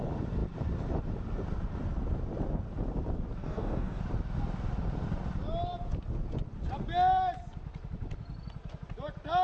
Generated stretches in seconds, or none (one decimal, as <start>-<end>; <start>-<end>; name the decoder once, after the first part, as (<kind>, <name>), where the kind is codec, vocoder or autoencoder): 3.4-4.0 (codec, DAC)